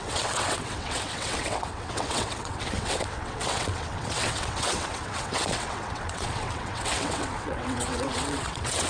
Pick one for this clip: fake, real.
fake